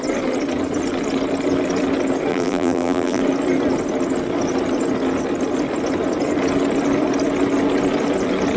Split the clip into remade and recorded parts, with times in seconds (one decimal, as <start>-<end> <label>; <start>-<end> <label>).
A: 0.0-2.3 recorded; 2.3-3.2 remade; 3.2-8.6 recorded

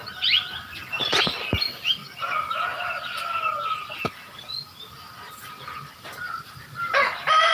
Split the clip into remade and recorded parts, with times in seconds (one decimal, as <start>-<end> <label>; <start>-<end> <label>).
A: 0.0-2.0 recorded; 2.0-3.0 remade; 3.0-5.8 recorded; 5.8-6.9 remade; 6.9-7.5 recorded

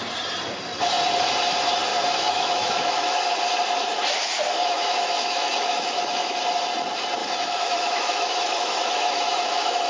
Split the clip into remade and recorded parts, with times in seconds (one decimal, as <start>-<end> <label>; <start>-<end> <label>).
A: 0.0-1.9 recorded; 1.9-3.4 remade; 3.4-4.6 recorded; 4.6-6.4 remade; 6.4-7.2 recorded; 7.2-9.9 remade

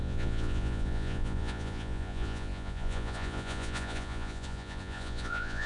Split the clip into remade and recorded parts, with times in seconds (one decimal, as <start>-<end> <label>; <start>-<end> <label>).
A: 0.0-5.7 remade

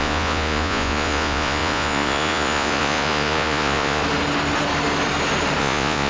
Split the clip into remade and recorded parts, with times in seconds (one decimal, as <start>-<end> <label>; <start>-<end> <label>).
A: 0.0-4.0 remade; 4.0-5.6 recorded; 5.6-6.1 remade

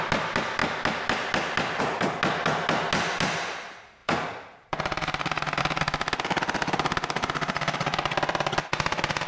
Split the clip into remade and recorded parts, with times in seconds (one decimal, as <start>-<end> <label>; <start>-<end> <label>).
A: 0.0-4.0 recorded; 4.0-5.6 remade; 5.6-9.3 recorded

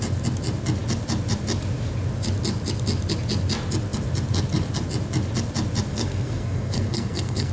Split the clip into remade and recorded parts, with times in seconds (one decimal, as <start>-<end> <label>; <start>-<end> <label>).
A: 0.0-5.9 recorded; 5.9-7.5 remade

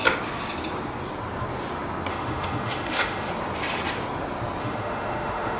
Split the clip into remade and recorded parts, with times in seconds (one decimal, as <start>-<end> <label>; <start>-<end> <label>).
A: 0.0-2.1 recorded; 2.1-3.3 remade; 3.3-4.6 recorded; 4.6-5.6 remade